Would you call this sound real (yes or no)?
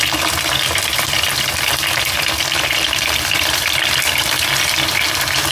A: no